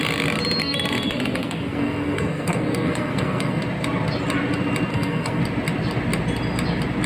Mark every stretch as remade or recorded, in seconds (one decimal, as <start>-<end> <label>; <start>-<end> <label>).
0.0-0.6 recorded; 0.6-3.6 remade; 3.6-4.9 recorded; 4.9-5.4 remade; 5.4-7.1 recorded